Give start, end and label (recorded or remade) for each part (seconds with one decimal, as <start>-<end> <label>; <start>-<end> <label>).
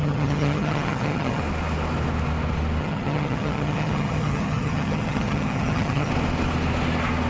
0.0-1.4 remade; 1.4-2.8 recorded; 2.8-6.1 remade; 6.1-7.3 recorded